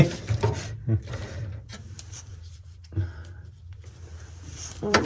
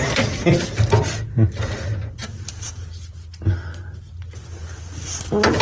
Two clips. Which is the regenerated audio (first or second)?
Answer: first